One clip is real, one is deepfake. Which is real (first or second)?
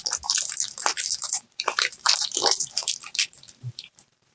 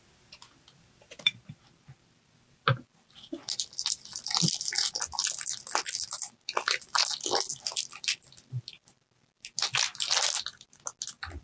second